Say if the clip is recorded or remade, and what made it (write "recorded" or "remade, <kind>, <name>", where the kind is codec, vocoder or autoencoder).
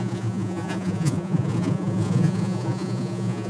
remade, vocoder, Vocos